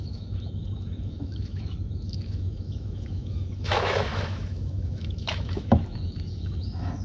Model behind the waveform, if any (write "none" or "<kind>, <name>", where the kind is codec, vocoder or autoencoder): autoencoder, DAC-VAE